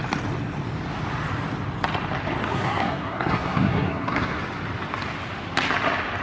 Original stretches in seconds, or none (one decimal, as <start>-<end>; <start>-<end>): 0.0-2.5; 4.4-6.2